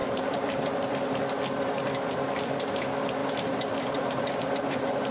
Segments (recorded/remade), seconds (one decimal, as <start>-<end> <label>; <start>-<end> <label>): 0.0-1.2 remade; 1.2-3.2 recorded; 3.2-4.4 remade; 4.4-5.1 recorded